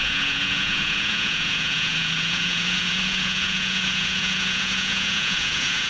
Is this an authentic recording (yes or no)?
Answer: no